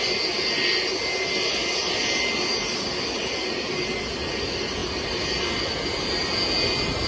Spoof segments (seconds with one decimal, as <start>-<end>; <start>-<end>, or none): none